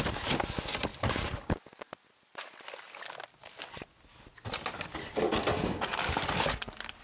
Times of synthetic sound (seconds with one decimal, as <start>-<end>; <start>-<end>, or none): none